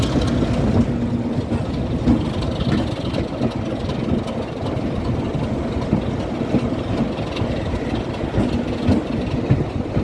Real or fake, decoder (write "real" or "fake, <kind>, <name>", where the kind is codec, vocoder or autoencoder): real